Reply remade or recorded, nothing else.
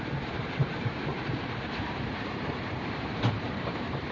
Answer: remade